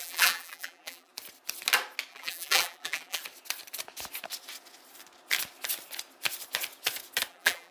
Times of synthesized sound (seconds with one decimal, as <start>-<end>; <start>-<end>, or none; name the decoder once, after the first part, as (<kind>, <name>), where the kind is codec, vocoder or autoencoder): 0.0-1.1 (vocoder, BigVGAN v2); 2.1-3.2; 7.3-7.7